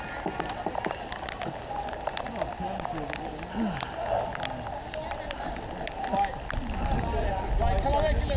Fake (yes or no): no